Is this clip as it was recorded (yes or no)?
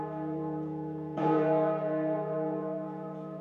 no